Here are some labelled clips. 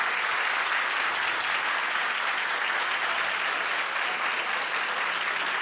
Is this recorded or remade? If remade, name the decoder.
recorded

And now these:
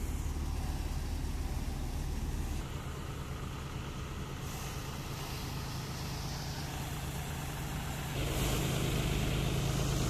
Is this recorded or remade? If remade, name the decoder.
recorded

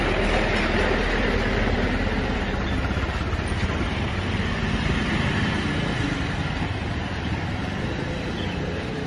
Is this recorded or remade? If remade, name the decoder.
recorded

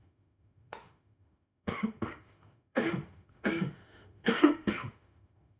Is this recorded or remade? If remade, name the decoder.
remade, autoencoder, DAC-VAE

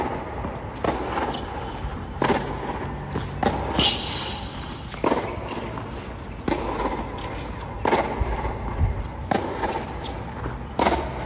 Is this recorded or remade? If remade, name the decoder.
recorded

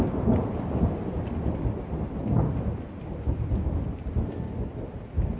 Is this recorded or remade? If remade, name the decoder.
recorded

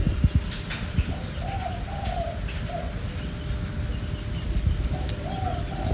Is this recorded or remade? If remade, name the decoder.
recorded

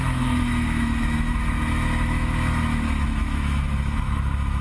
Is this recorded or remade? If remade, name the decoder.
remade, autoencoder, DAC-VAE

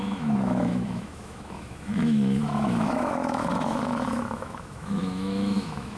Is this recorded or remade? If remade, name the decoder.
remade, autoencoder, DAC-VAE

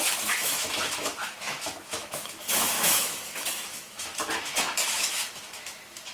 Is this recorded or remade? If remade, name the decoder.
remade, autoencoder, DAC-VAE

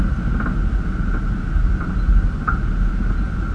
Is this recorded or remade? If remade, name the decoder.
recorded